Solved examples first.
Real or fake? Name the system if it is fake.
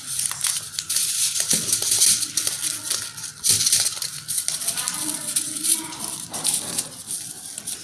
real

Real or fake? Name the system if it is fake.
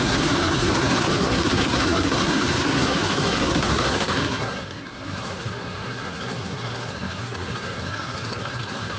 fake, codec, SNAC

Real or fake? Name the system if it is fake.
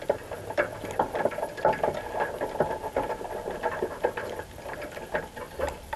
real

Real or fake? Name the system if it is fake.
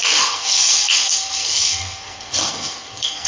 fake, codec, SNAC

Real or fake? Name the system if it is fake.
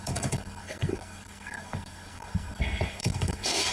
fake, codec, SNAC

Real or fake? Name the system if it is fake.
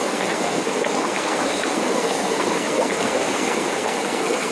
fake, codec, SNAC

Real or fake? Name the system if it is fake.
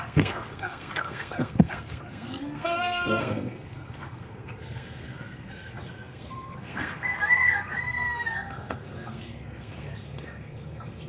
fake, codec, SNAC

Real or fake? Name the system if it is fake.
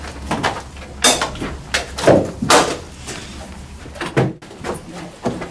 real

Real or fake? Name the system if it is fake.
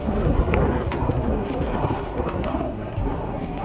fake, codec, SNAC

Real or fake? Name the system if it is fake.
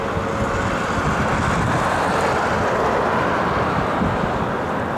real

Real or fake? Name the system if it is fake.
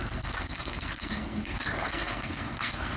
fake, codec, SNAC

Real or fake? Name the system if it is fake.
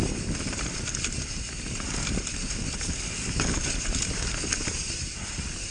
real